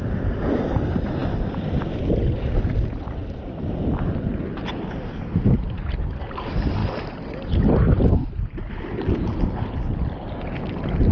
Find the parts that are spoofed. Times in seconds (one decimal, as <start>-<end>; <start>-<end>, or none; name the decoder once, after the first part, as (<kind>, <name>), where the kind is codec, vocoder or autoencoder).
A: 1.2-2.0 (vocoder, BigVGAN v2); 3.2-3.7; 6.8-8.3